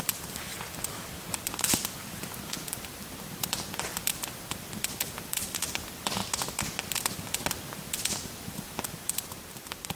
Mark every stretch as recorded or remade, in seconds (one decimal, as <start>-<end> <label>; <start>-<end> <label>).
0.0-0.5 remade; 0.5-1.5 recorded; 1.5-6.2 remade; 6.2-7.5 recorded; 7.5-10.0 remade